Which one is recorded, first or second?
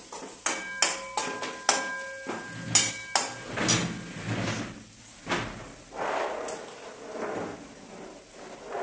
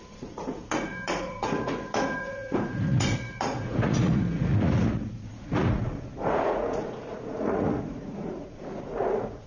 first